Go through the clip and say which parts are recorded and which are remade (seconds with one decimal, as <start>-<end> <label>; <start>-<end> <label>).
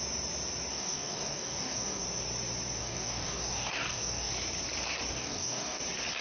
0.0-0.7 recorded; 0.7-2.0 remade; 2.0-2.8 recorded; 2.8-4.3 remade; 4.3-5.1 recorded; 5.1-5.8 remade; 5.8-6.2 recorded